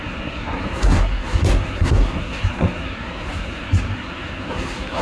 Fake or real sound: fake